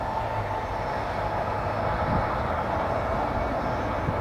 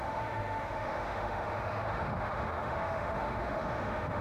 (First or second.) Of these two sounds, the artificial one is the second